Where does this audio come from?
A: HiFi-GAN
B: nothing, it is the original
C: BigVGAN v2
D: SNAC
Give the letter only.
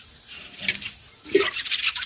C